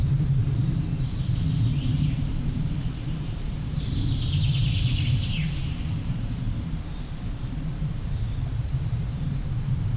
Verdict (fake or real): fake